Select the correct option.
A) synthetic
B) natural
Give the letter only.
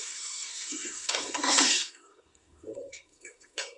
A